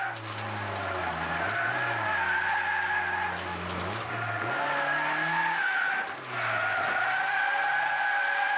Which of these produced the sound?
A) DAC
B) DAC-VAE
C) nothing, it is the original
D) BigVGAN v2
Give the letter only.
C